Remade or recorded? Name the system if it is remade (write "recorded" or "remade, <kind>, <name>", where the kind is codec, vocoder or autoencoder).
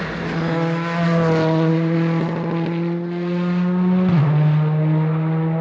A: recorded